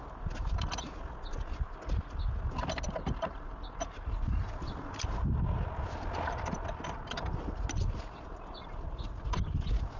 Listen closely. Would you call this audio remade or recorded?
recorded